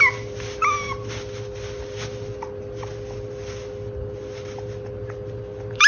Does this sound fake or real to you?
real